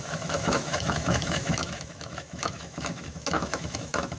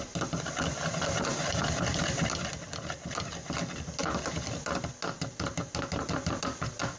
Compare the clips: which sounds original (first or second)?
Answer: second